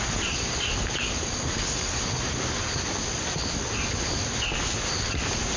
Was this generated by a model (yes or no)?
no